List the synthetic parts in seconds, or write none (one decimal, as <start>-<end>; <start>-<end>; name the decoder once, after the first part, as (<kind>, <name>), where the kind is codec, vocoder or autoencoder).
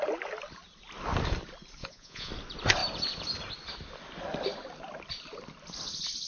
1.8-2.3 (vocoder, Vocos)